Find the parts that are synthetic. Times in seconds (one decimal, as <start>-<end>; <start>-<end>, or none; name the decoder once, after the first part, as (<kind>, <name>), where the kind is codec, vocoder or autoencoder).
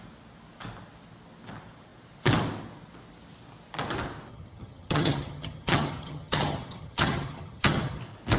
4.3-8.0 (vocoder, HiFi-GAN)